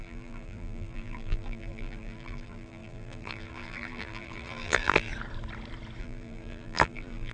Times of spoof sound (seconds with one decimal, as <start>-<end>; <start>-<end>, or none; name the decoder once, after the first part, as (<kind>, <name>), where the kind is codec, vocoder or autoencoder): 0.0-5.1 (vocoder, BigVGAN v2); 6.0-7.3